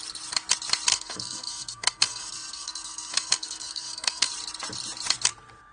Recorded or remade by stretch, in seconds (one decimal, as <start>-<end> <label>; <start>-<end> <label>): 0.0-0.9 recorded; 0.9-4.3 remade; 4.3-5.7 recorded